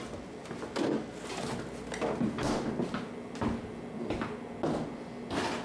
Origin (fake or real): real